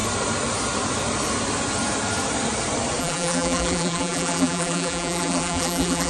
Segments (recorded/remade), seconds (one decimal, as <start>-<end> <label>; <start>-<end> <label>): 0.0-3.0 recorded; 3.0-6.1 remade